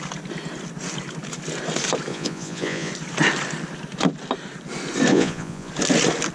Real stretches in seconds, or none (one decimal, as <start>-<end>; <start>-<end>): 0.0-2.1; 2.9-5.1; 5.7-6.3